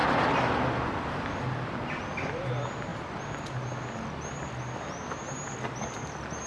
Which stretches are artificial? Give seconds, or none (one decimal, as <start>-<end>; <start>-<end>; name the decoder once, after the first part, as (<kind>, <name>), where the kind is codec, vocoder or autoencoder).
none